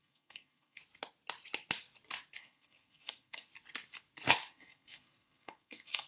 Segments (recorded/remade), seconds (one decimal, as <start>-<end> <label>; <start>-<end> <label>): 0.0-0.8 remade; 0.8-2.4 recorded; 2.4-3.5 remade; 3.5-4.5 recorded; 4.5-6.1 remade